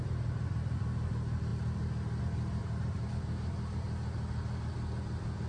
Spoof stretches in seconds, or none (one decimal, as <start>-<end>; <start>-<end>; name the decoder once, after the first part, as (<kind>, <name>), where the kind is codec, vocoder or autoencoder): 2.6-3.1 (vocoder, BigVGAN v2)